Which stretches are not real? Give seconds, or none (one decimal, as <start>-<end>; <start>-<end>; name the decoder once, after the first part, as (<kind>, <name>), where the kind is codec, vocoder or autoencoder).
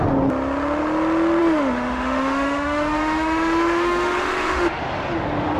1.4-4.8 (autoencoder, DAC-VAE)